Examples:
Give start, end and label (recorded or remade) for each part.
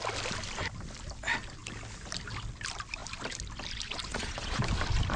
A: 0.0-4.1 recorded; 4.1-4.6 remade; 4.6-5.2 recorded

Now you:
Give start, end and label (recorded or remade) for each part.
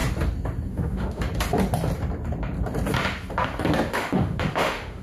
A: 0.0-0.7 recorded; 0.7-1.2 remade; 1.2-3.9 recorded; 3.9-5.0 remade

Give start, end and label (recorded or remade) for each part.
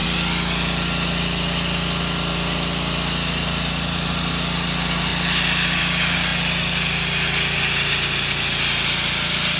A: 0.0-9.6 recorded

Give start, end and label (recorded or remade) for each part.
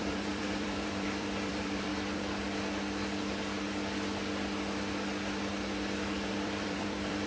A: 0.0-1.9 remade; 1.9-6.3 recorded; 6.3-7.3 remade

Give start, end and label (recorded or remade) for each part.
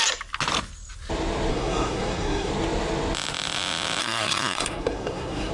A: 0.0-1.5 recorded; 1.5-2.5 remade; 2.5-4.0 recorded; 4.0-5.5 remade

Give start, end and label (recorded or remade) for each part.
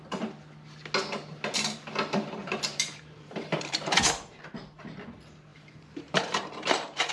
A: 0.0-2.4 recorded; 2.4-4.6 remade; 4.6-5.5 recorded; 5.5-7.1 remade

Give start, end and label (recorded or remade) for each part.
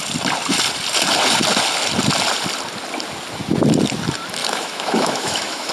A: 0.0-4.4 recorded; 4.4-5.7 remade